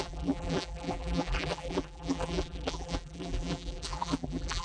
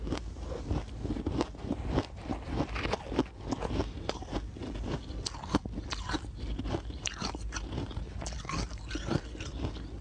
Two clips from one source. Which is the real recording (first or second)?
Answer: second